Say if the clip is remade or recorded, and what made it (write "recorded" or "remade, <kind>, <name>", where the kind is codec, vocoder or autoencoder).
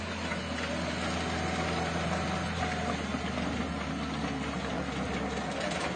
recorded